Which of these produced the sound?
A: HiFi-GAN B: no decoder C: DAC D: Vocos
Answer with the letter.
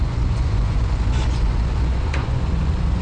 D